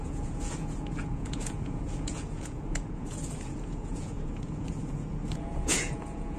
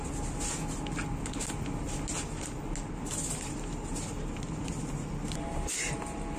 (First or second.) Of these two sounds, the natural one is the second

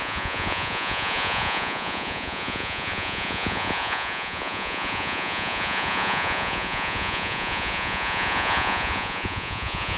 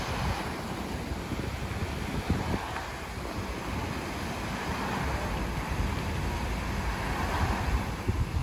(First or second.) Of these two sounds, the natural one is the second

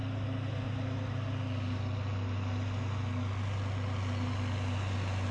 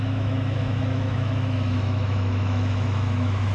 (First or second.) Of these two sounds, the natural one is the first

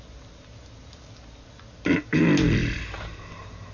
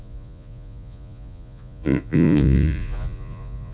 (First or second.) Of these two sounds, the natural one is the first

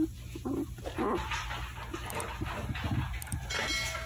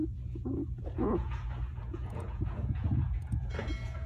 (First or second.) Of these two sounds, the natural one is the first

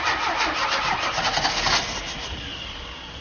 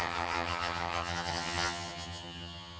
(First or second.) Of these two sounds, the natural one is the first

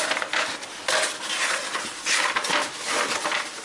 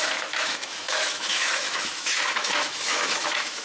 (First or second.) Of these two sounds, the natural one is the first